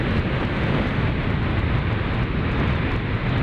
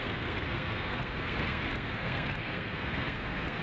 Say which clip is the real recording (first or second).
first